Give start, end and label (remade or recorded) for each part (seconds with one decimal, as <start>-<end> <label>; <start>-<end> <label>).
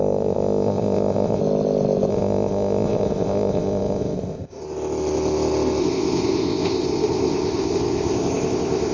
0.0-1.4 remade; 1.4-2.1 recorded; 2.1-4.6 remade; 4.6-5.8 recorded; 5.8-8.9 remade